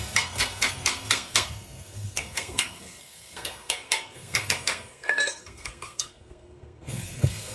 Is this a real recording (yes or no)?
no